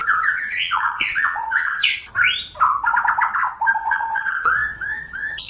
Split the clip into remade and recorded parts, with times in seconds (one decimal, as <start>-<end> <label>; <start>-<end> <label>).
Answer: 0.0-2.1 remade; 2.1-3.8 recorded; 3.8-5.5 remade